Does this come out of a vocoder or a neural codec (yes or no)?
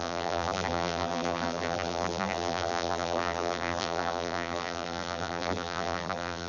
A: yes